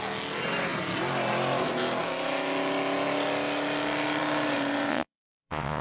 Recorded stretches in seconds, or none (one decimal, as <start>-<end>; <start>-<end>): 0.0-4.9